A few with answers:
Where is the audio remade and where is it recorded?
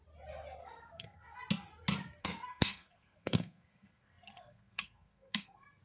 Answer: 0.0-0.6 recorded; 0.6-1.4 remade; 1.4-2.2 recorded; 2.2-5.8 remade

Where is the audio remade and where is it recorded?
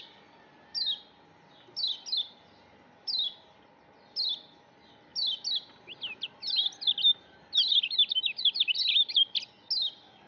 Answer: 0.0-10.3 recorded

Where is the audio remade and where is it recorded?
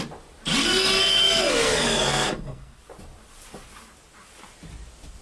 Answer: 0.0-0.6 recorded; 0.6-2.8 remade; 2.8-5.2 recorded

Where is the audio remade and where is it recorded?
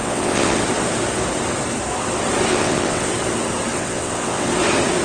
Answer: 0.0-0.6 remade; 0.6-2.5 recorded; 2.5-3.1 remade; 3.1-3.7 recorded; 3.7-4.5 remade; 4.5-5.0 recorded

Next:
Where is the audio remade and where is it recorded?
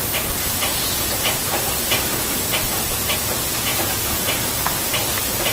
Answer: 0.0-0.7 recorded; 0.7-1.6 remade; 1.6-3.7 recorded; 3.7-4.4 remade; 4.4-5.5 recorded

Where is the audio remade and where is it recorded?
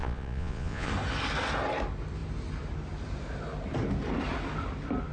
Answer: 0.0-0.9 remade; 0.9-5.1 recorded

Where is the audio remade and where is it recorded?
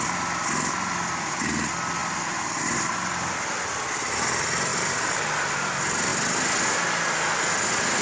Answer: 0.0-4.7 recorded; 4.7-5.2 remade; 5.2-8.0 recorded